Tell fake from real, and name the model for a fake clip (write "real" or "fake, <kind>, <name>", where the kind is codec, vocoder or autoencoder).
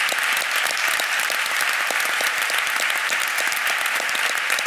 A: fake, vocoder, BigVGAN v2